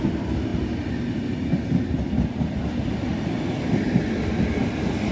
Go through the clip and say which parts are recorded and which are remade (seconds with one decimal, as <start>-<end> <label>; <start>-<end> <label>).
0.0-5.1 recorded